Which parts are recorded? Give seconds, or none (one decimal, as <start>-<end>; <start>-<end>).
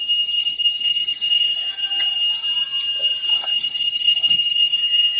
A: 0.0-0.4; 1.6-3.3; 4.7-5.2